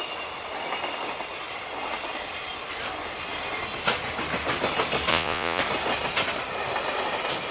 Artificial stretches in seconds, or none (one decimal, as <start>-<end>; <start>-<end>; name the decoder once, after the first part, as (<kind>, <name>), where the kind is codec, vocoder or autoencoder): 5.1-5.6 (vocoder, Vocos)